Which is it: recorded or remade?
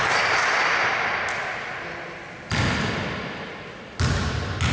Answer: recorded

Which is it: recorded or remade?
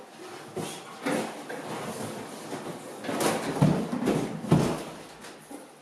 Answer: recorded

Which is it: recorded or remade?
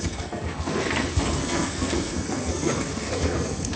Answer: remade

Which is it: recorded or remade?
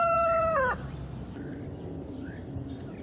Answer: remade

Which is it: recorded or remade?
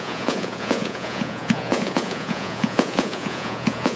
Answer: remade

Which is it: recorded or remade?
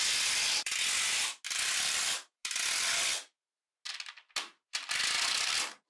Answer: recorded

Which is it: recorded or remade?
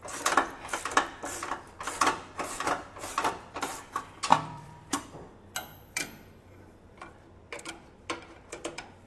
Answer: remade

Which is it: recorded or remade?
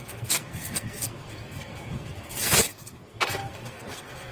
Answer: remade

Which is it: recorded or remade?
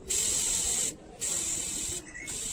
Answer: recorded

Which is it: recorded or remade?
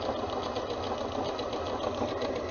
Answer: recorded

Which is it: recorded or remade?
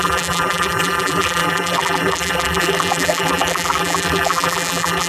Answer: remade